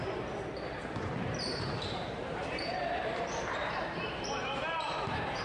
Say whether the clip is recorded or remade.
remade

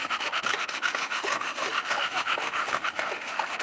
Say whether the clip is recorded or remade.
remade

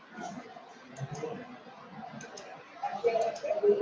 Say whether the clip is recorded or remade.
recorded